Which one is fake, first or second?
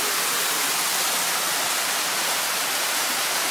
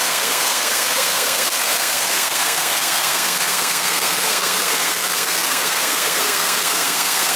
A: second